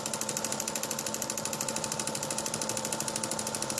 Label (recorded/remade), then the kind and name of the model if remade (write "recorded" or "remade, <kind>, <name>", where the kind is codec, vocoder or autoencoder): recorded